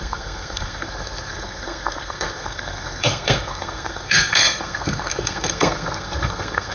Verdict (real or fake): fake